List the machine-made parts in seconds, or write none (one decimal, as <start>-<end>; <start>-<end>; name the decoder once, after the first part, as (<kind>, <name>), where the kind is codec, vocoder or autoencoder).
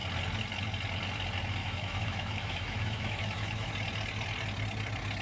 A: 1.6-3.7 (autoencoder, DAC-VAE)